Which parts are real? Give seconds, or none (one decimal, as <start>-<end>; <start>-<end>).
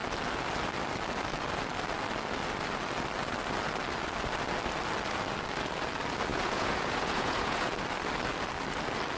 0.0-6.3; 7.7-9.2